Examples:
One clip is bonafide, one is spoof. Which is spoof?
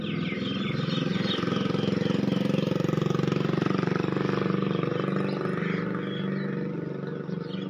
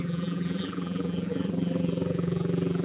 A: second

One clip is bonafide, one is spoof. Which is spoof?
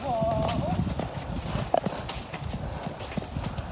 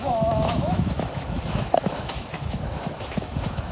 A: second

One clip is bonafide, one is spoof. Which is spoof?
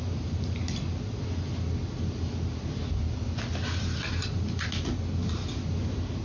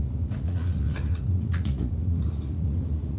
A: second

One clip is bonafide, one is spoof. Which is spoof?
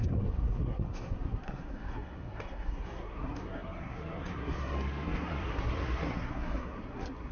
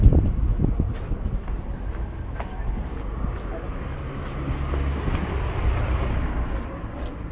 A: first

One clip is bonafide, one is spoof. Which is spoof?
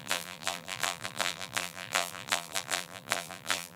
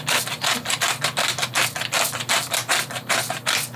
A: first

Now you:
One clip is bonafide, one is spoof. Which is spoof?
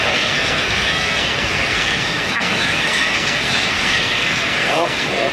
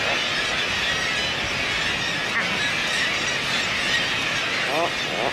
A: first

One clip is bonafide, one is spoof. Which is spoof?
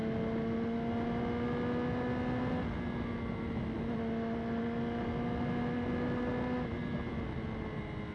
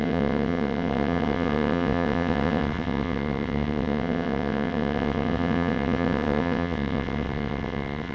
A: second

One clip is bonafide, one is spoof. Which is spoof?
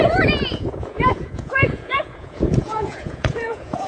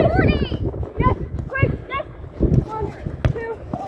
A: first